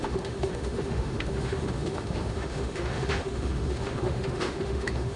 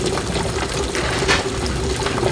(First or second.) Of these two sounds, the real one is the second